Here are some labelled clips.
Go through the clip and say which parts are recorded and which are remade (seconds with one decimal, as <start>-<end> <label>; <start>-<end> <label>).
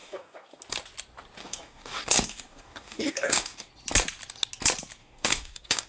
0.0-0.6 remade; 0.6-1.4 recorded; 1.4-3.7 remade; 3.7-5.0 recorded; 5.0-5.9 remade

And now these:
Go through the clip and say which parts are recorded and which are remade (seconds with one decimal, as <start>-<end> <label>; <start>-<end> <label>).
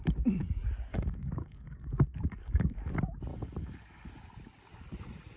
0.0-0.9 recorded; 0.9-2.9 remade; 2.9-3.3 recorded; 3.3-4.1 remade; 4.1-5.4 recorded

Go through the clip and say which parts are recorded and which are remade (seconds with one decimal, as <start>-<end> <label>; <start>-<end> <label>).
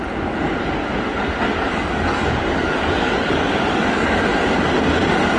0.0-1.5 recorded; 1.5-4.4 remade; 4.4-5.4 recorded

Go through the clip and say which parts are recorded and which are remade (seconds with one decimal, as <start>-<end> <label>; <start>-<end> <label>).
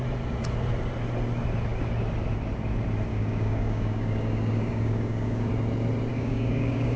0.0-3.1 recorded; 3.1-5.5 remade; 5.5-6.1 recorded; 6.1-7.0 remade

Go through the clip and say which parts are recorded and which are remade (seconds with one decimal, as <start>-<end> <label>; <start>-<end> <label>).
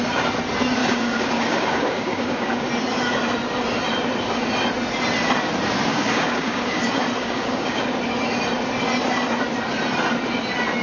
0.0-0.8 recorded; 0.8-2.7 remade; 2.7-5.9 recorded; 5.9-6.8 remade; 6.8-7.2 recorded; 7.2-7.8 remade; 7.8-10.8 recorded